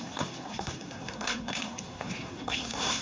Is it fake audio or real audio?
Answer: fake